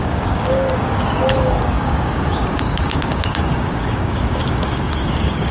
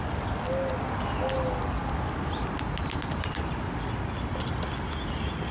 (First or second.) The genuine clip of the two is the second